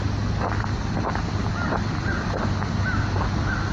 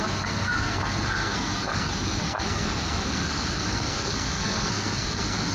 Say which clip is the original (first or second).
first